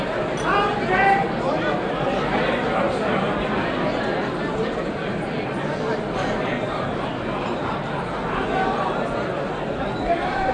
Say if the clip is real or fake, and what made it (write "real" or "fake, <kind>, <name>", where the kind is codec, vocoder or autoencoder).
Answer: real